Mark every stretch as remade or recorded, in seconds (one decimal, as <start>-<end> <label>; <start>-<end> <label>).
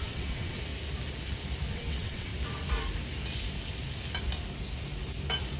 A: 0.0-0.7 remade; 0.7-1.7 recorded; 1.7-2.3 remade; 2.3-5.6 recorded